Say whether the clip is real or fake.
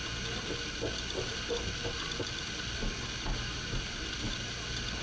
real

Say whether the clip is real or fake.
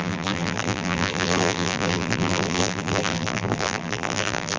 fake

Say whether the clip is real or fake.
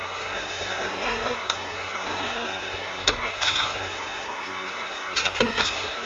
fake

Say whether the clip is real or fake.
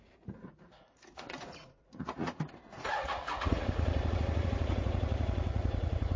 fake